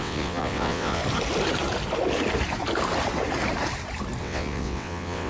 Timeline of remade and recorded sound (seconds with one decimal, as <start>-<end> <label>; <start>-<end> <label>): 0.0-1.0 remade; 1.0-4.2 recorded; 4.2-5.3 remade